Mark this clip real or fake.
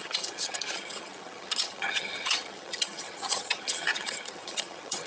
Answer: fake